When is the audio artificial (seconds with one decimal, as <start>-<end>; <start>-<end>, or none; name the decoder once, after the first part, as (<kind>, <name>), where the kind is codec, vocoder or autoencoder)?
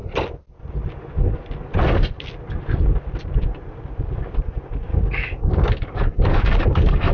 4.9-7.1 (codec, DAC)